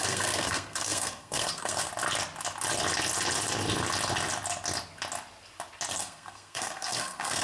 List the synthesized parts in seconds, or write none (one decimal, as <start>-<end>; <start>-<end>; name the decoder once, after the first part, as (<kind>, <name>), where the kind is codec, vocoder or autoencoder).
0.0-1.9 (codec, SNAC); 5.9-7.4